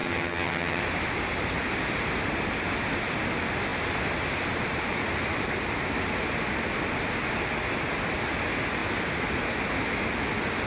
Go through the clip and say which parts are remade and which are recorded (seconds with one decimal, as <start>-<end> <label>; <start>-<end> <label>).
0.0-0.8 remade; 0.8-10.7 recorded